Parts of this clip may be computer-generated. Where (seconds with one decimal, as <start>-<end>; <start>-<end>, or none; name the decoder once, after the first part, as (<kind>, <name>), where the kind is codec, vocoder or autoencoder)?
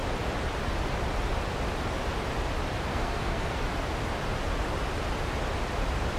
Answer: 2.9-3.6 (codec, SNAC)